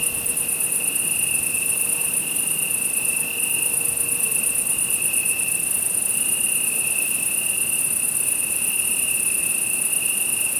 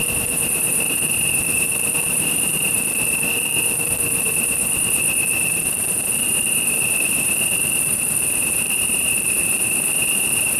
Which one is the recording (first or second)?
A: first